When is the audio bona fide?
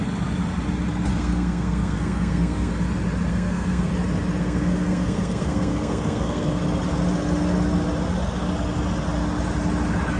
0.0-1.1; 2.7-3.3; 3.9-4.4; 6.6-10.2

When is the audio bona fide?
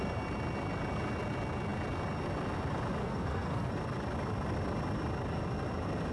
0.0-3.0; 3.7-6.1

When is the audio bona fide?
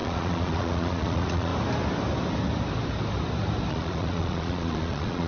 1.5-3.7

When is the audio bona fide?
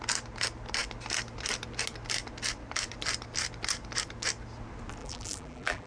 0.0-5.0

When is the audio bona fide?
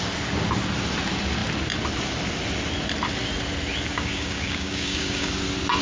0.0-3.9; 5.3-5.8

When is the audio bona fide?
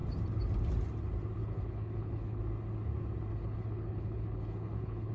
0.0-1.4; 2.4-3.3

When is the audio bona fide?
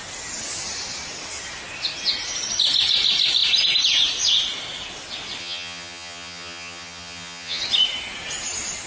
0.0-5.4; 7.6-8.9